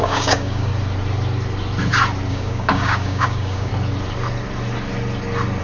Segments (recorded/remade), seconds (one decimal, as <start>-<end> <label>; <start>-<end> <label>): 0.0-0.7 remade; 0.7-2.3 recorded; 2.3-3.7 remade; 3.7-5.6 recorded